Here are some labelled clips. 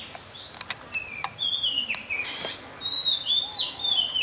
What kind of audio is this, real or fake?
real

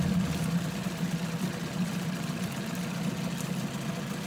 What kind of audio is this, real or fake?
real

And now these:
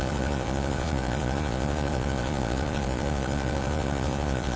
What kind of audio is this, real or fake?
fake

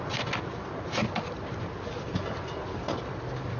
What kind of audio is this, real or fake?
real